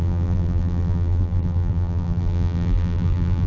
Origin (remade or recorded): remade